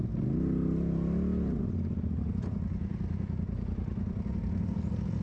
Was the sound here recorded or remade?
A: recorded